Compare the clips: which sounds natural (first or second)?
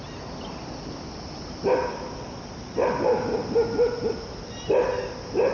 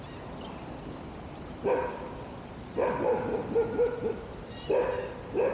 first